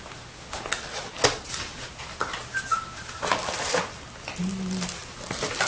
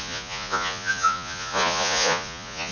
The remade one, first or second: second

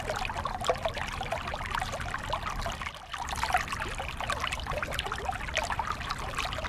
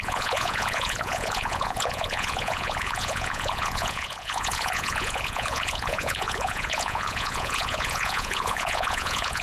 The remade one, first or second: second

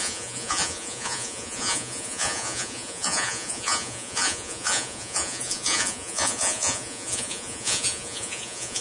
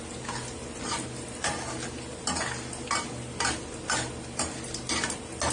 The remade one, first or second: first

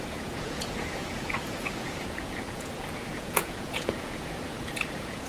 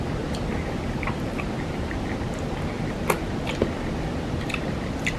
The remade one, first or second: first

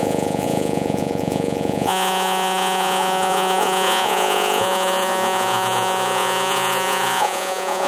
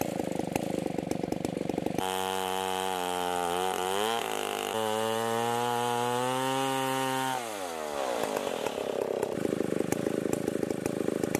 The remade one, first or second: first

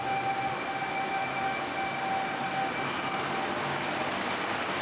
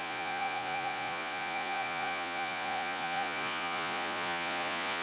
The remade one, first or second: second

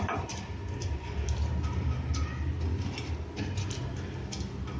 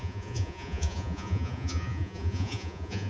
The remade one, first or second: second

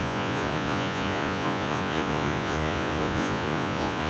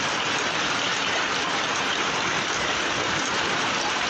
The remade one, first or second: first